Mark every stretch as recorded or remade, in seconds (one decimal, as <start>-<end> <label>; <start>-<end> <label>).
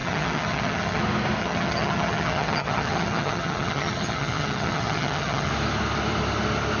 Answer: 0.0-1.0 remade; 1.0-1.4 recorded; 1.4-5.5 remade; 5.5-6.8 recorded